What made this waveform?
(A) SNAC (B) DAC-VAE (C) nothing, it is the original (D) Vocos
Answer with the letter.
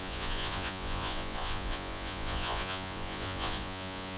D